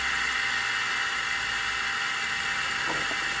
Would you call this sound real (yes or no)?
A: yes